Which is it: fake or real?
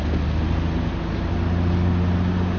real